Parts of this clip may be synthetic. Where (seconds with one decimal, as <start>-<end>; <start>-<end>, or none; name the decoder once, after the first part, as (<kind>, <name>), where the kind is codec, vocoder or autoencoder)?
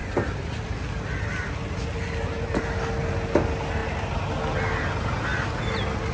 none